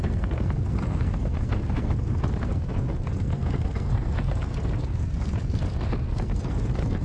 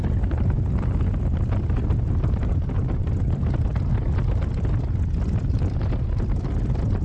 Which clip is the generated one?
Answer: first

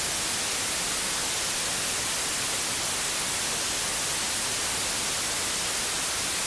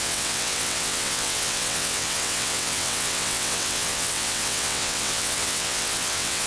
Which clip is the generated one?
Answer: second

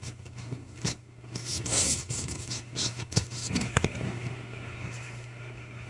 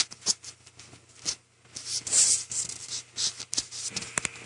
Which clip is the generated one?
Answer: first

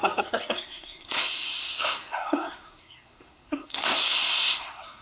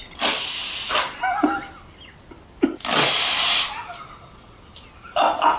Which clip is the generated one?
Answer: first